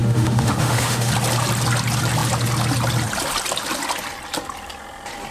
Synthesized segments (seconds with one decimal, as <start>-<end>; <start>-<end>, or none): 0.0-1.1